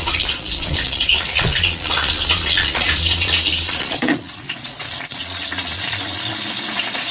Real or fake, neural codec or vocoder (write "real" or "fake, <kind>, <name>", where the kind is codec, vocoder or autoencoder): fake, vocoder, Vocos